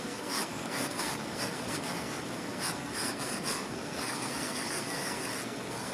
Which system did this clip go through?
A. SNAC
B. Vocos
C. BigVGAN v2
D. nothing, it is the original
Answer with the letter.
A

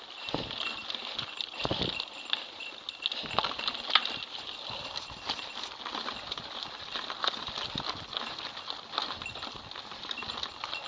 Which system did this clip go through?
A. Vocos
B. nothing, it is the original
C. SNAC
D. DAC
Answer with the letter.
B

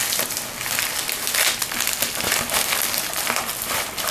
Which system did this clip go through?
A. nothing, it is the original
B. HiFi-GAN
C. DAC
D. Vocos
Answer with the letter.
A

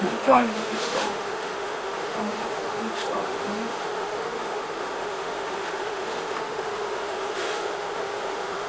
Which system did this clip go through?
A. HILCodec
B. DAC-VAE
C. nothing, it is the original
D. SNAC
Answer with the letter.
B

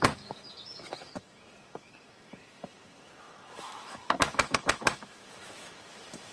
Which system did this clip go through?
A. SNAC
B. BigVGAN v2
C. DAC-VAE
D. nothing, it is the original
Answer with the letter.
C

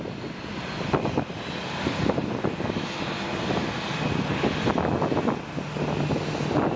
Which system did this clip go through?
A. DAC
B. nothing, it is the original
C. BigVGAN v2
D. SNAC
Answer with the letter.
B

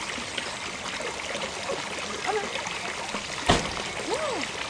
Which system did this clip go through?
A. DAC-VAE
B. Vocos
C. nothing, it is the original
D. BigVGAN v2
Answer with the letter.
C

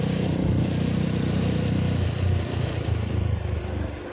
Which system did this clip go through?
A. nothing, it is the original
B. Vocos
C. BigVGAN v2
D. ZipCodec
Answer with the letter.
C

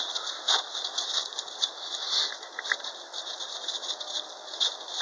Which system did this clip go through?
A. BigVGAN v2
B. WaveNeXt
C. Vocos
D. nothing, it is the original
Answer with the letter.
D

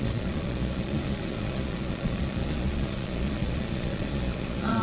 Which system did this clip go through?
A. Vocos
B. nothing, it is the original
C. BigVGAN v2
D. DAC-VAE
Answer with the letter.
A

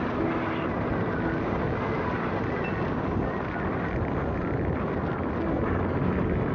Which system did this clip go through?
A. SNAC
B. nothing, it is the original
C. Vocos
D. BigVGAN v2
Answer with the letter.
B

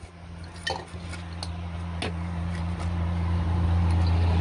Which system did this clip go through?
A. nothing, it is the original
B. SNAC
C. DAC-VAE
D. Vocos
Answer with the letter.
A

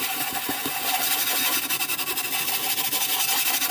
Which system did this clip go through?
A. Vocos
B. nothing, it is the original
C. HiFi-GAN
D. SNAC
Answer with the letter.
B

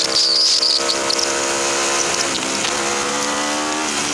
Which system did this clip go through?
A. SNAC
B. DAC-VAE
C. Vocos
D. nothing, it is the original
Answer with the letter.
D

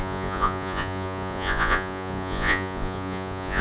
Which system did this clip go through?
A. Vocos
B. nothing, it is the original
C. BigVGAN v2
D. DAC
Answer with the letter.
A